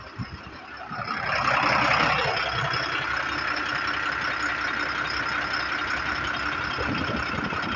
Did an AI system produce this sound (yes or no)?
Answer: no